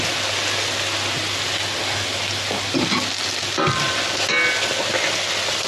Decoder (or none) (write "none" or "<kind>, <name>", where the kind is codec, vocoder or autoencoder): none